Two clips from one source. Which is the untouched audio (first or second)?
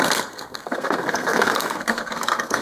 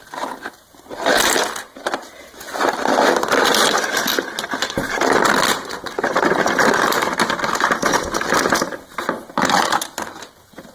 second